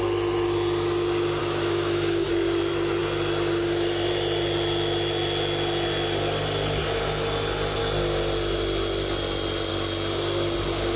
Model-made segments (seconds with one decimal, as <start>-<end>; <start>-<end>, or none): 1.4-2.3